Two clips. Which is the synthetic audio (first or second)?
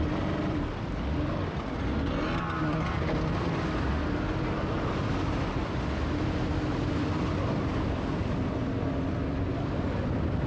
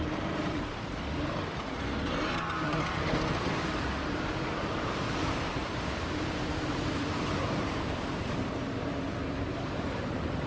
second